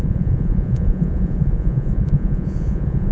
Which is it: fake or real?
fake